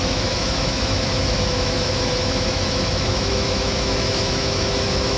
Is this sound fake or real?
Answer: fake